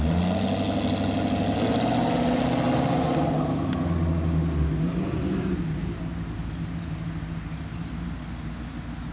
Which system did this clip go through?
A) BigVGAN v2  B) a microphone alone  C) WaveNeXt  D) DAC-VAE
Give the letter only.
B